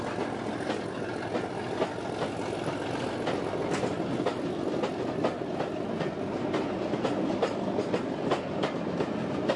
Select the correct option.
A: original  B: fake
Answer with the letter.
A